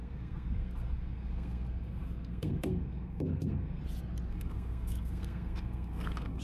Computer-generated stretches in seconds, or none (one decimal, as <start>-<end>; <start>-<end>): 0.0-3.8; 4.3-6.4